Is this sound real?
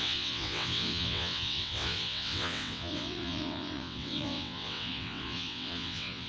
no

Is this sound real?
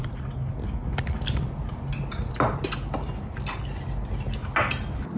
yes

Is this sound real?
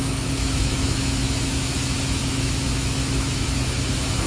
no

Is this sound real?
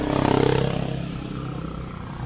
yes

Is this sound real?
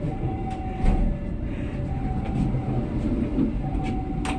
yes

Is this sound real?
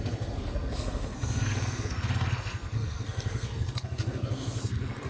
no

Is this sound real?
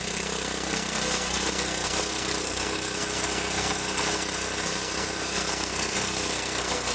no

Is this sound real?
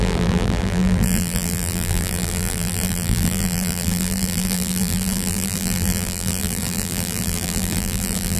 no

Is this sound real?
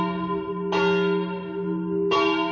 yes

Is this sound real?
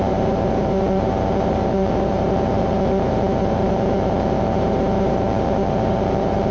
no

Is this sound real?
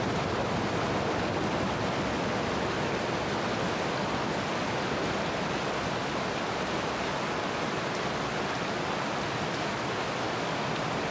yes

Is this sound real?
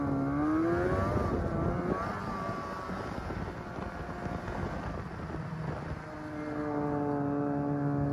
yes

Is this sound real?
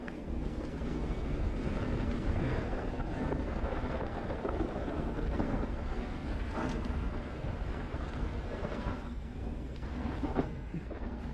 no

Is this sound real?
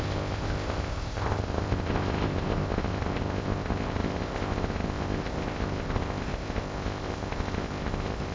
no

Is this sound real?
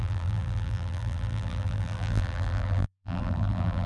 no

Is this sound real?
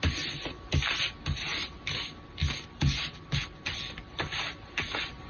yes